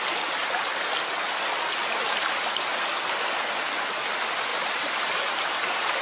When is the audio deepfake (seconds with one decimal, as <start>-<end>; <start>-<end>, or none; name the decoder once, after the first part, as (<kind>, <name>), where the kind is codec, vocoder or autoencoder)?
4.5-6.0 (vocoder, BigVGAN v2)